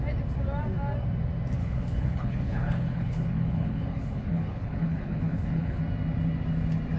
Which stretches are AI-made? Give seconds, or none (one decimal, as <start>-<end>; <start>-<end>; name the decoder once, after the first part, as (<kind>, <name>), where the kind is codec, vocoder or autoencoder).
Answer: 1.6-5.8 (codec, HILCodec)